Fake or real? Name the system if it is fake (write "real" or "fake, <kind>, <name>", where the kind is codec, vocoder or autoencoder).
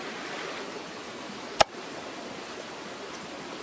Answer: real